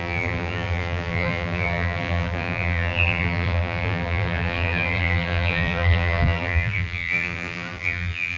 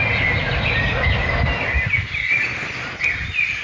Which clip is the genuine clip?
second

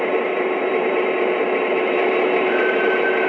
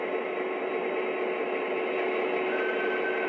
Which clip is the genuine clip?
second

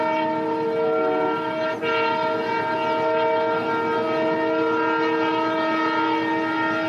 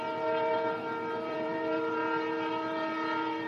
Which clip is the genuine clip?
first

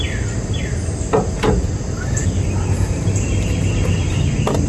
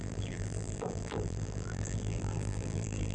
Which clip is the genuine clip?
first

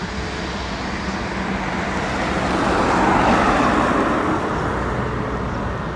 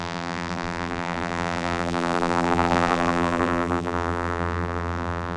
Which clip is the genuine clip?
first